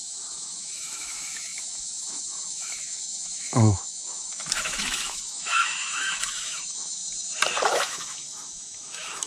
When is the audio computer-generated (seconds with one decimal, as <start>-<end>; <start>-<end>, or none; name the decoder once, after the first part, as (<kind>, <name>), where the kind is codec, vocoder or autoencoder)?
0.0-7.0 (autoencoder, DAC-VAE); 7.7-9.3